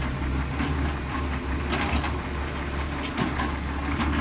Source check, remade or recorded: recorded